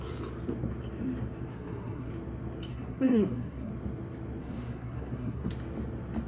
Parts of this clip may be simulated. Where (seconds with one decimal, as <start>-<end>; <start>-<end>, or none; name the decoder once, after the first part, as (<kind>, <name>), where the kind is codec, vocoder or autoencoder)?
1.5-2.1 (codec, SNAC); 2.7-3.7; 4.4-5.5